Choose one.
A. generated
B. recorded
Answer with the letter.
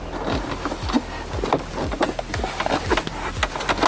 B